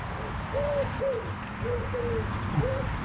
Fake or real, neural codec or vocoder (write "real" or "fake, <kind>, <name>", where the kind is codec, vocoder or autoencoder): real